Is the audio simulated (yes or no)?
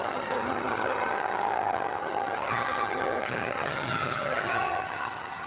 yes